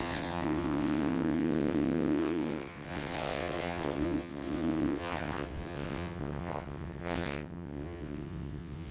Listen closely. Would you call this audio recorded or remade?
remade